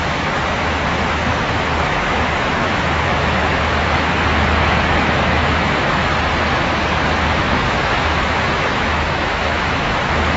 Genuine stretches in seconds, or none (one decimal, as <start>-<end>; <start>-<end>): 6.1-7.4